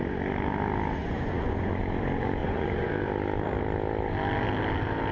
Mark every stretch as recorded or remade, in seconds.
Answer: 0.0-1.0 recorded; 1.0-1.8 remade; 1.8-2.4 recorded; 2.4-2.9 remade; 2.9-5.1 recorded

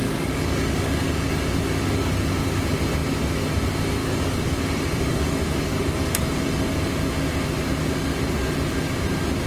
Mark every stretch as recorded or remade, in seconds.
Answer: 0.0-1.3 remade; 1.3-4.0 recorded; 4.0-6.7 remade; 6.7-9.5 recorded

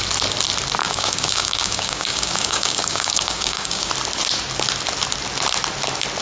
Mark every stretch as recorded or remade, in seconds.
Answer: 0.0-0.8 recorded; 0.8-3.9 remade; 3.9-6.2 recorded

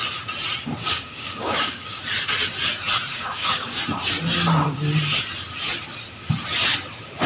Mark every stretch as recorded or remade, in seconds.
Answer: 0.0-0.8 recorded; 0.8-2.0 remade; 2.0-3.1 recorded; 3.1-3.8 remade; 3.8-7.3 recorded